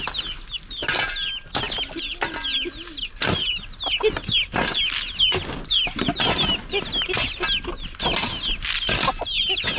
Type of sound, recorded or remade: recorded